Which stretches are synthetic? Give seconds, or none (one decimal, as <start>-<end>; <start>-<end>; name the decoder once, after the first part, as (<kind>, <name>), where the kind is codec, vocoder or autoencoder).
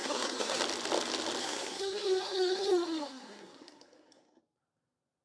0.0-0.6 (codec, SNAC); 1.4-4.4